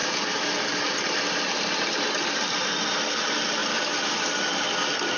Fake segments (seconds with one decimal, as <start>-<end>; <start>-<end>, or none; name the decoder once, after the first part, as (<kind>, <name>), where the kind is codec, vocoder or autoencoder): none